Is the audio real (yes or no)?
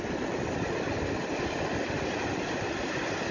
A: yes